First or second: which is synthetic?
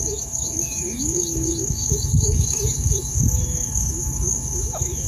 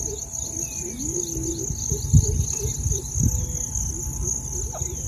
first